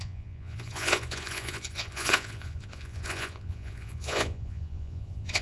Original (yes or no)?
no